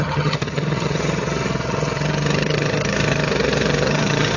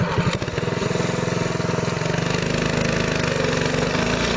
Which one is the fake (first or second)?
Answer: first